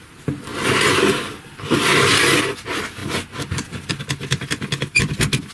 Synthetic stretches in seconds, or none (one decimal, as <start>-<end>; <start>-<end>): none